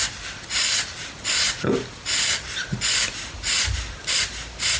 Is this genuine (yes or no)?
yes